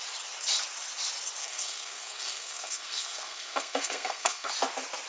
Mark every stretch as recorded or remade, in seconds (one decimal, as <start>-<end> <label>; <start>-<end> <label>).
0.0-1.4 recorded; 1.4-4.5 remade; 4.5-5.1 recorded